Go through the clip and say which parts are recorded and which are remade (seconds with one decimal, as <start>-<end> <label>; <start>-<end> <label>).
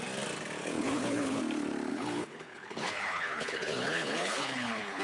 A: 0.0-0.6 recorded; 0.6-1.4 remade; 1.4-1.9 recorded; 1.9-5.0 remade